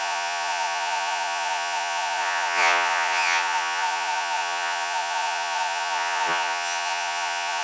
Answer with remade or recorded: remade